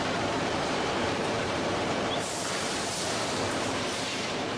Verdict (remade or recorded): remade